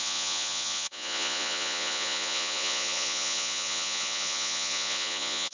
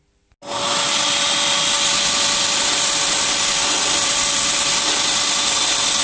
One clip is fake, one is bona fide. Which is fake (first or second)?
first